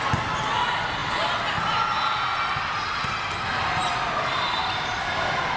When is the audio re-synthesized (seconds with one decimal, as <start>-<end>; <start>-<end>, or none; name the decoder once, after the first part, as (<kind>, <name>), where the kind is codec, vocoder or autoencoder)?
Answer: none